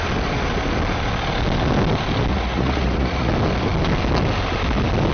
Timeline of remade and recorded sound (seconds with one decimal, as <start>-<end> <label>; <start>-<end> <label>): 0.0-2.3 recorded; 2.3-3.3 remade; 3.3-5.1 recorded